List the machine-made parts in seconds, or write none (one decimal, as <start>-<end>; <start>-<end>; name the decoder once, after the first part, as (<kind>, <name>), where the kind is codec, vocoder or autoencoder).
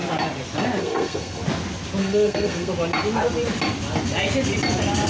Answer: 0.8-1.4 (codec, SNAC); 2.0-2.7